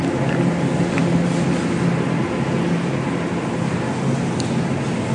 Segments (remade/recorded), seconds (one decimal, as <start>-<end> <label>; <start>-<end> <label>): 0.0-5.1 recorded